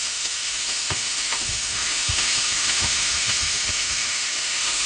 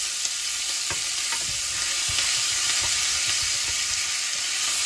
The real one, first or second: second